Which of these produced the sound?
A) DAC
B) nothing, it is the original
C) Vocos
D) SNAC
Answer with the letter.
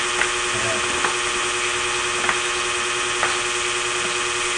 B